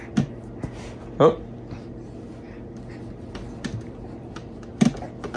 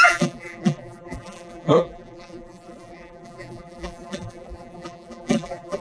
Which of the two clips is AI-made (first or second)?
second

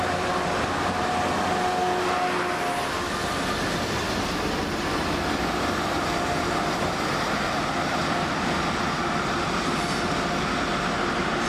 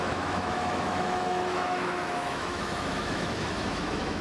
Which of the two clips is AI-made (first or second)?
second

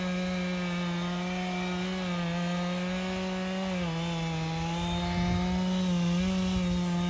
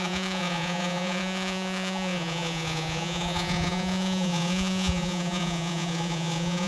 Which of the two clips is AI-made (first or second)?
second